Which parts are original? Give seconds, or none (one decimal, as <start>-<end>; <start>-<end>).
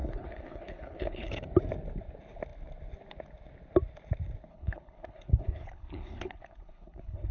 1.3-4.5